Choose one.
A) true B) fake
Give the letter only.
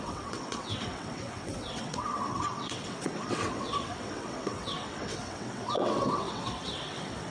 B